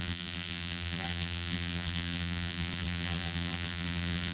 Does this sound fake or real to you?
fake